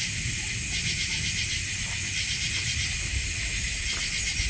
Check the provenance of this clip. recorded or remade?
recorded